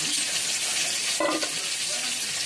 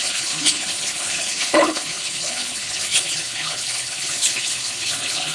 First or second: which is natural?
first